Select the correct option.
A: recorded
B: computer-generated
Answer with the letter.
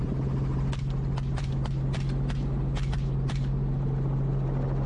A